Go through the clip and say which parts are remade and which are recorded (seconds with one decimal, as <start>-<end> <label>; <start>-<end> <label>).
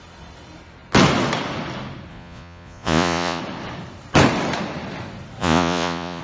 0.0-2.1 recorded; 2.1-3.4 remade; 3.4-5.4 recorded; 5.4-6.2 remade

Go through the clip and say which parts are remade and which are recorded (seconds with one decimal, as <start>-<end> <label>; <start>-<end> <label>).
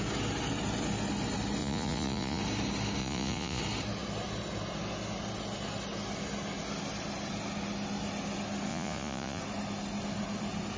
0.0-1.6 recorded; 1.6-2.4 remade; 2.4-3.0 recorded; 3.0-3.6 remade; 3.6-8.7 recorded; 8.7-9.4 remade; 9.4-10.8 recorded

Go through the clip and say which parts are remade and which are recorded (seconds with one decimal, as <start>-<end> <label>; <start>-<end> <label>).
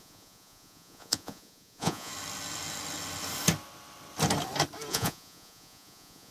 0.0-2.1 remade; 2.1-4.9 recorded; 4.9-6.3 remade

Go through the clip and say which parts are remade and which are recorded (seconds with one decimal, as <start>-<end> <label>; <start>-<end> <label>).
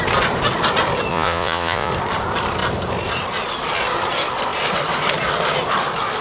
0.0-1.1 recorded; 1.1-1.9 remade; 1.9-6.2 recorded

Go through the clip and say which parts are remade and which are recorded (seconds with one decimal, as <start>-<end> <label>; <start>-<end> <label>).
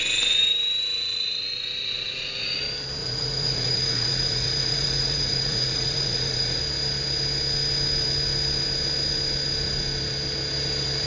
0.0-1.1 recorded; 1.1-2.6 remade; 2.6-3.0 recorded; 3.0-6.6 remade; 6.6-11.1 recorded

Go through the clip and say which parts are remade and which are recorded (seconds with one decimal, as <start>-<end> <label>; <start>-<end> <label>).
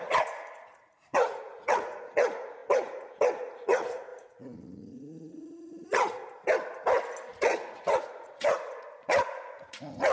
0.0-6.2 remade; 6.2-7.3 recorded; 7.3-10.1 remade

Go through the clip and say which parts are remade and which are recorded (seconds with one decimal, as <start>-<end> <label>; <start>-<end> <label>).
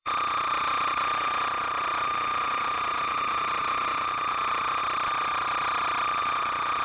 0.0-4.8 remade; 4.8-6.2 recorded; 6.2-6.8 remade